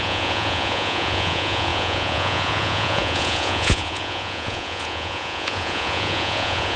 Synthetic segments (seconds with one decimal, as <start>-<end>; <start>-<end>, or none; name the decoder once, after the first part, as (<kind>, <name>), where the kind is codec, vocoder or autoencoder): 0.0-6.8 (vocoder, Vocos)